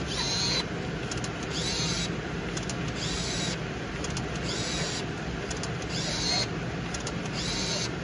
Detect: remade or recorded recorded